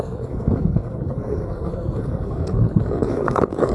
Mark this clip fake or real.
fake